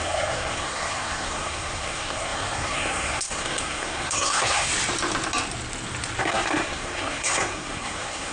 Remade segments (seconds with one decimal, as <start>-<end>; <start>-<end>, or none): 0.0-4.7; 6.2-8.3